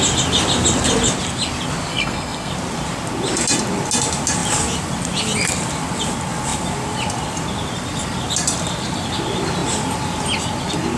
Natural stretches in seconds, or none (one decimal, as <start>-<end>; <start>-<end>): 0.0-1.9; 2.5-11.0